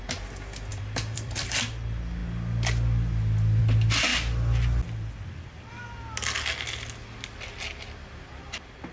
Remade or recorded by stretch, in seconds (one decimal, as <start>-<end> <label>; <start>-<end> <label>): 0.0-0.7 recorded; 0.7-1.6 remade; 1.6-8.9 recorded